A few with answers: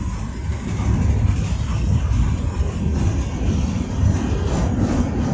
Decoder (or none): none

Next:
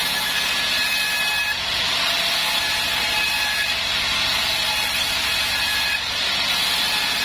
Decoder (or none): none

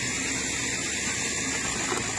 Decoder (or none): none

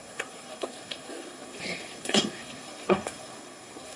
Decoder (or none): codec, SNAC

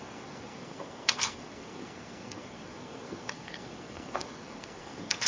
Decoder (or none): codec, SNAC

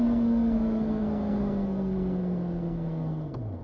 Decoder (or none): codec, SNAC